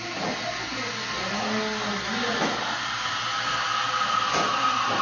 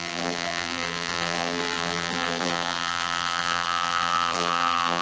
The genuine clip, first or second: first